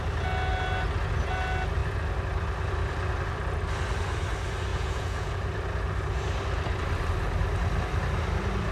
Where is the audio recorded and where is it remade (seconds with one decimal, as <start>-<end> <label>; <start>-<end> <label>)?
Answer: 0.0-4.7 recorded; 4.7-5.3 remade; 5.3-8.7 recorded